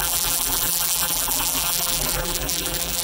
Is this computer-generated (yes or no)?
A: yes